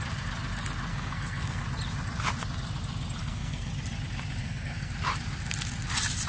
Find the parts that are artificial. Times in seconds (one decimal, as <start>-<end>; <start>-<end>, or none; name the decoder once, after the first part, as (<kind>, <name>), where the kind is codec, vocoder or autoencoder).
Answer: 0.9-1.6 (codec, SNAC); 3.2-3.7; 4.4-4.9